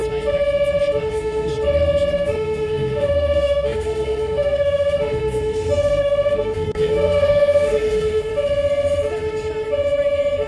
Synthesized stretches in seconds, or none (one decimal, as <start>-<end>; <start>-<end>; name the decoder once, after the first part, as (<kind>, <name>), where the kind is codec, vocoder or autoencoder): 1.1-1.5 (codec, SNAC); 2.1-8.3